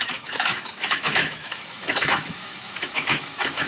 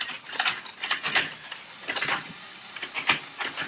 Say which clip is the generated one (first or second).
first